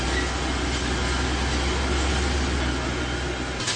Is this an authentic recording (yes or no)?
yes